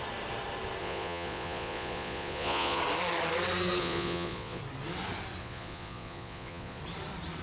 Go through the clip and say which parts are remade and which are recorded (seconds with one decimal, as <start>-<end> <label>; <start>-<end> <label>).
0.0-0.8 recorded; 0.8-2.8 remade; 2.8-3.8 recorded; 3.8-4.6 remade; 4.6-5.4 recorded; 5.4-6.8 remade; 6.8-7.4 recorded